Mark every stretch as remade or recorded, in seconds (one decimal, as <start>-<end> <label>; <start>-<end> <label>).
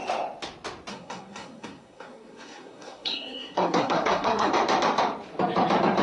0.0-0.9 recorded; 0.9-4.5 remade; 4.5-6.0 recorded